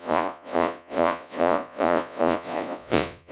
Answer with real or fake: fake